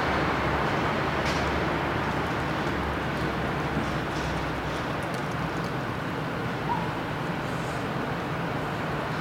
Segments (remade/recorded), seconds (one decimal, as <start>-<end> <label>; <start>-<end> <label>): 0.0-9.2 recorded